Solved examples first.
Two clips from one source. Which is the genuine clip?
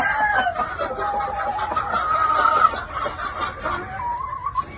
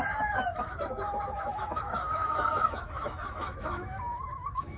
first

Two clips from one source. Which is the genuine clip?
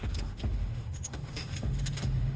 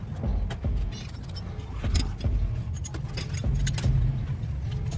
second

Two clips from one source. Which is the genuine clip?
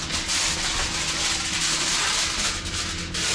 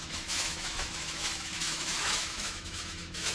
first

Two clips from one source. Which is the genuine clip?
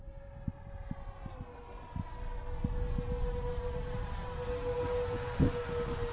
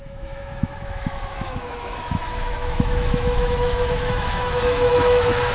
first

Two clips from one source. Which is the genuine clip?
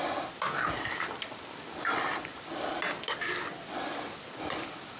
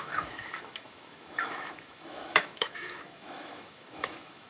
first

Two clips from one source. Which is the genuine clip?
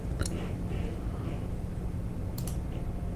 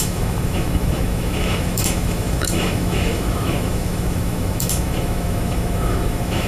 first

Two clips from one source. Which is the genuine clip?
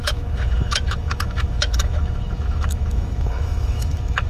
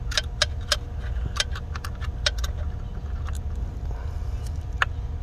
second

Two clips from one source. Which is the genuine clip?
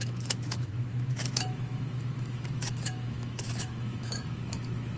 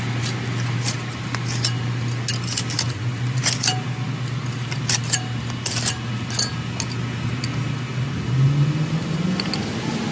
second